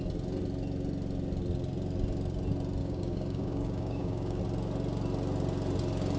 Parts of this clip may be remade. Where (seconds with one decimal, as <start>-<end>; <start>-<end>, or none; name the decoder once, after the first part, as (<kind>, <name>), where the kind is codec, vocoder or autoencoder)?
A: 2.8-4.4 (codec, DAC)

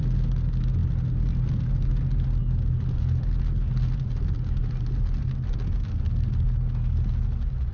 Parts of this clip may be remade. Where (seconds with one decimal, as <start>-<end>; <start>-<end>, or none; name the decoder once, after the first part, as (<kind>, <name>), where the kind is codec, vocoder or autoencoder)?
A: none